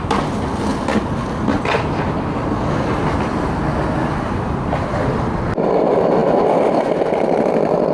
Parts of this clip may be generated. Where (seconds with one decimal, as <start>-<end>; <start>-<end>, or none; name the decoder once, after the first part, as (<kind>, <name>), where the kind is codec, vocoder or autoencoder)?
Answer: none